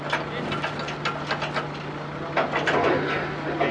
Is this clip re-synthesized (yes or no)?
no